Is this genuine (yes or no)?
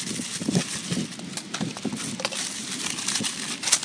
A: yes